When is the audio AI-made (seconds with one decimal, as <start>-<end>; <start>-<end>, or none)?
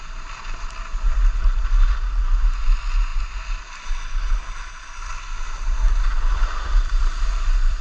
6.1-7.8